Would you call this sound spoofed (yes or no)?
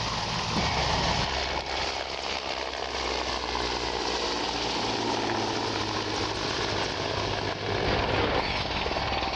no